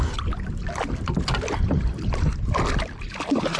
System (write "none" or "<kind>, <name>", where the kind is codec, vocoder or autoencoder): none